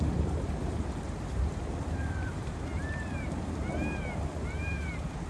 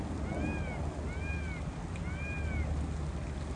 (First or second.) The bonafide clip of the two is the second